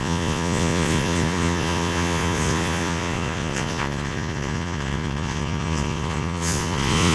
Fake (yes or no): yes